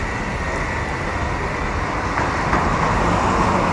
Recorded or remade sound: recorded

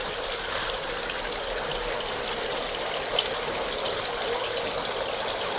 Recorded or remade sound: recorded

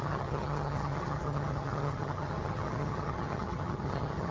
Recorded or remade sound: remade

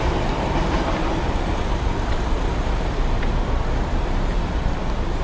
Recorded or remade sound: remade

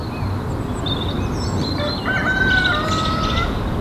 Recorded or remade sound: recorded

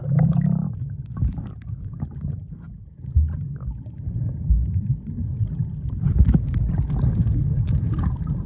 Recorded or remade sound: recorded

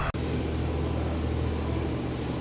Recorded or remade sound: recorded